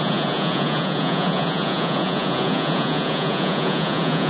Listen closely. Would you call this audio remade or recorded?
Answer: remade